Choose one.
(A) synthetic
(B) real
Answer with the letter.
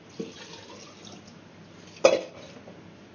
B